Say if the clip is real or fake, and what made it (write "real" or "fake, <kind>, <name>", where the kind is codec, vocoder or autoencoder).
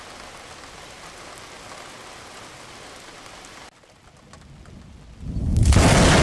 real